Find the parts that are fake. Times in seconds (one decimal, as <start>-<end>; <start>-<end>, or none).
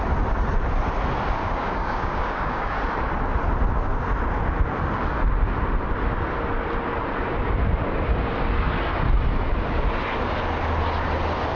1.4-2.8